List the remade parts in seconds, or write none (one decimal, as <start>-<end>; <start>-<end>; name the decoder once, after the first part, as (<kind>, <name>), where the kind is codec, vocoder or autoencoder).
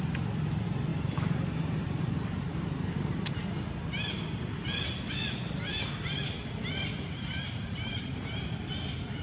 0.9-3.1 (vocoder, BigVGAN v2); 6.9-8.3